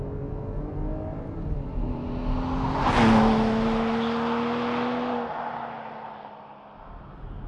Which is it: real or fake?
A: real